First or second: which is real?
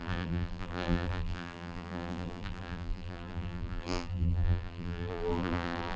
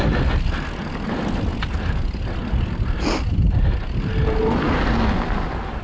second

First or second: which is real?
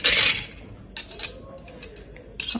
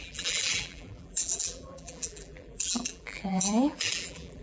first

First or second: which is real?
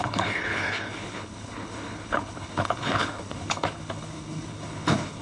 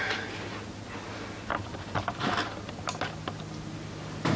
second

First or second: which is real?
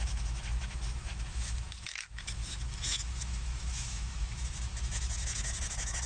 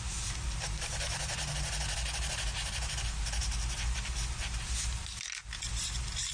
second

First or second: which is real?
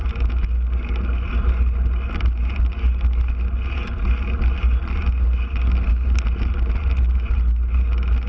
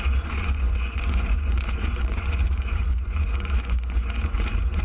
first